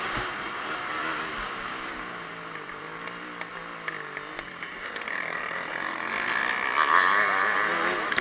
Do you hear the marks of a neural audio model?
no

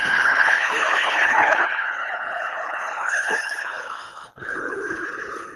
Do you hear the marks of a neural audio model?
yes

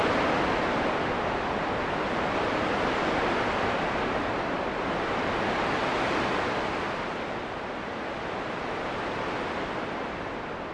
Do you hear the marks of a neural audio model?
no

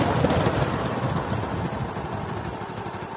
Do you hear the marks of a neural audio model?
no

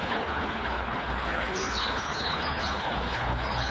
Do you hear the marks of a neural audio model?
yes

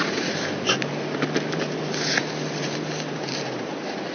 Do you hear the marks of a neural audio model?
no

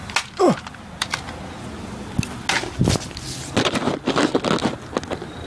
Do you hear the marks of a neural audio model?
no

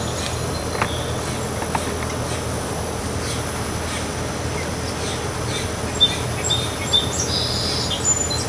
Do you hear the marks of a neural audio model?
no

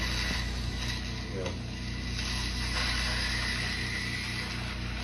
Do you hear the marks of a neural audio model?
no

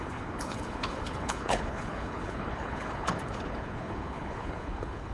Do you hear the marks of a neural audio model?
yes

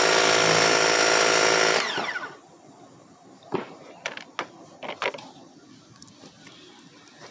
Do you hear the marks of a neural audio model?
no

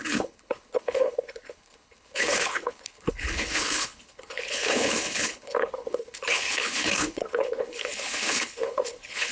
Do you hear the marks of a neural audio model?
yes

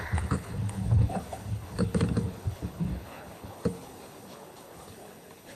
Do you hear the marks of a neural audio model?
yes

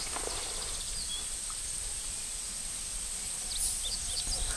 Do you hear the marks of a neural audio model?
no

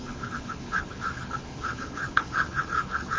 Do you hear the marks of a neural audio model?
yes